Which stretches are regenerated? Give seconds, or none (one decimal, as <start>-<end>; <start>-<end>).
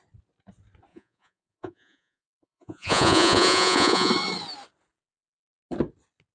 0.9-4.1